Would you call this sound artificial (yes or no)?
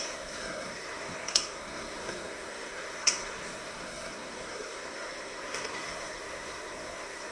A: yes